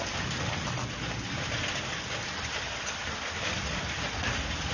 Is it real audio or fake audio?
real